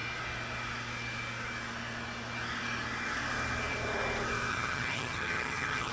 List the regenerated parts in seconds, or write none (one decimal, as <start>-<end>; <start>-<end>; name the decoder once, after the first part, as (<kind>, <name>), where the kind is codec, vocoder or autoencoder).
4.5-5.9 (vocoder, HiFi-GAN)

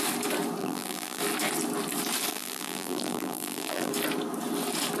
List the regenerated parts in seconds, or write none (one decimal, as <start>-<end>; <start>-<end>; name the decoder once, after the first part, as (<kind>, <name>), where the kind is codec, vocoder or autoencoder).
0.6-1.2 (vocoder, BigVGAN v2); 2.3-3.9

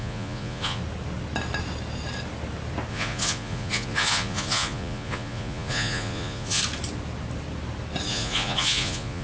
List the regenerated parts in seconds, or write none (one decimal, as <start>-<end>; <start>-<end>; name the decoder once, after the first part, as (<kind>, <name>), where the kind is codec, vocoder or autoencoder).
0.0-0.8 (vocoder, Vocos); 2.9-6.6; 8.1-9.2

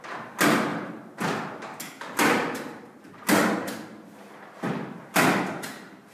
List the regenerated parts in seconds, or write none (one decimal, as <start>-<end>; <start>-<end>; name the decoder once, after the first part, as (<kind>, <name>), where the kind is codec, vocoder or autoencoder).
none

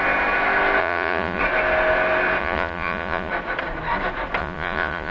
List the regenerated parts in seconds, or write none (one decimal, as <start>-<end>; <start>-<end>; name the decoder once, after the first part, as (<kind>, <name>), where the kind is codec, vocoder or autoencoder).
0.8-1.4 (vocoder, Vocos); 2.4-3.3; 4.4-5.1